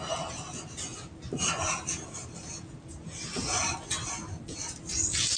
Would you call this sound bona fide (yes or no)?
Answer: yes